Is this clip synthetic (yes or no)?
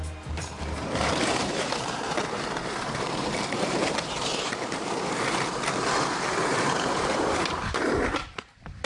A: yes